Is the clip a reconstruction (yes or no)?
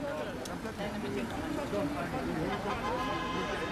no